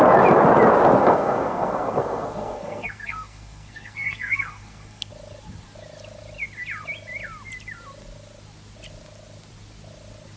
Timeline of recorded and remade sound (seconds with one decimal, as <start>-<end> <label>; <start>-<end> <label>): 0.0-1.0 recorded; 1.0-5.1 remade; 5.1-10.4 recorded